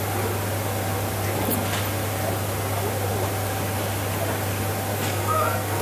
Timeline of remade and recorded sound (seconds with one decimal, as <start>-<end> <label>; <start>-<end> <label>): 0.0-4.9 recorded; 4.9-5.8 remade